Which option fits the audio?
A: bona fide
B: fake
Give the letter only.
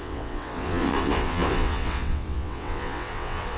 B